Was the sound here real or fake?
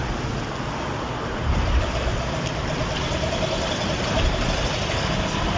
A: real